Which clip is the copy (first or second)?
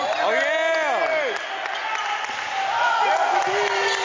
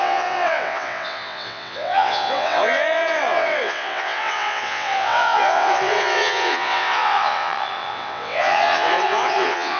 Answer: second